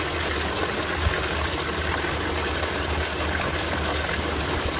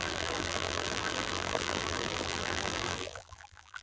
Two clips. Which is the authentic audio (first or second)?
first